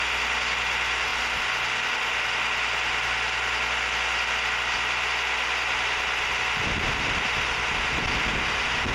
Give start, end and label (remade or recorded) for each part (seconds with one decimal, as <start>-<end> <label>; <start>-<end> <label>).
0.0-8.9 recorded